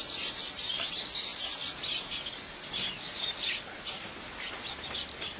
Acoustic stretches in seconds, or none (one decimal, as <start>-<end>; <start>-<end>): 0.0-5.4